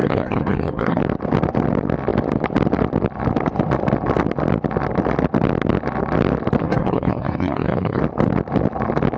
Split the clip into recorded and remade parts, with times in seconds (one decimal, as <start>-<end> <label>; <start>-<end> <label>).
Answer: 0.0-1.0 remade; 1.0-6.6 recorded; 6.6-8.0 remade; 8.0-9.2 recorded